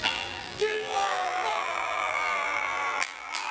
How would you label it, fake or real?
fake